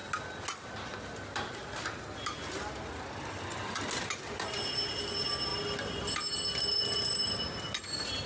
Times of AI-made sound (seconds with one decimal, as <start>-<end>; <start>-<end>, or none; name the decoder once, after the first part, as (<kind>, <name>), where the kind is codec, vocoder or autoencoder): none